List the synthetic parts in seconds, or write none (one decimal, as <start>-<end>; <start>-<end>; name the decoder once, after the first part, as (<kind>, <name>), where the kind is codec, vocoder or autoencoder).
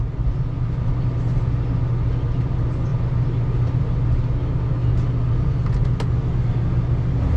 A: none